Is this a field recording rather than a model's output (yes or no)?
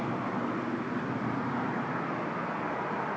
yes